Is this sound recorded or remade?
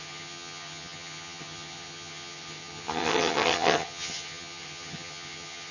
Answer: remade